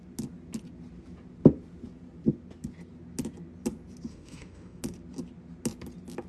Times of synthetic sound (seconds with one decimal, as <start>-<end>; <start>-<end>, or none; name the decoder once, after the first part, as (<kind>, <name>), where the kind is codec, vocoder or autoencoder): 4.1-4.8 (autoencoder, DAC-VAE)